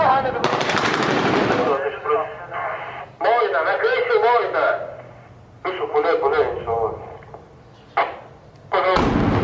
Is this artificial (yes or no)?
no